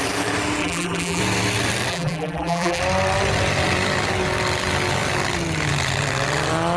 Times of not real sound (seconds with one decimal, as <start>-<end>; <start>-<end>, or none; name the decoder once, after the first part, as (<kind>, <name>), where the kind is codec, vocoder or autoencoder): 0.6-1.2 (vocoder, BigVGAN v2); 1.9-2.8